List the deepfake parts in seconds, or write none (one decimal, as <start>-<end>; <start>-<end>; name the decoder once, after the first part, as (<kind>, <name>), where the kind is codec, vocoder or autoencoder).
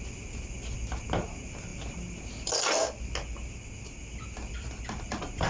none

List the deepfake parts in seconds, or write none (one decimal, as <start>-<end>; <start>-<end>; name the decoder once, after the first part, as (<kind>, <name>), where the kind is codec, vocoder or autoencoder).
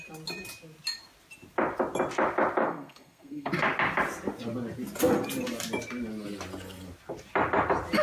2.6-3.5 (codec, SNAC)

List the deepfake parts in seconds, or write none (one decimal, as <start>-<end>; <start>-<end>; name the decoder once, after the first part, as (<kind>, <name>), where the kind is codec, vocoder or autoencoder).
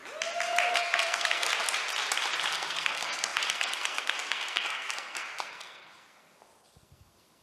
0.7-1.5 (codec, SNAC); 2.5-7.4